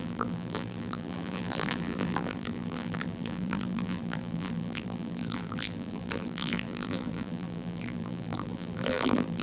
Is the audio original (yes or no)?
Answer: no